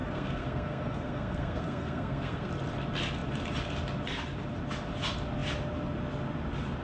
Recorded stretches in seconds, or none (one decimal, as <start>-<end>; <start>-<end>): 2.5-6.8